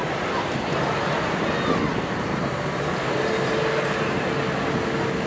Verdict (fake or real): real